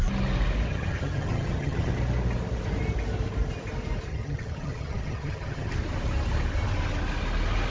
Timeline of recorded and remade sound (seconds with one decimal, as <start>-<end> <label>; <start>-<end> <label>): 0.0-0.7 recorded; 0.7-1.9 remade; 1.9-4.1 recorded; 4.1-5.7 remade; 5.7-7.7 recorded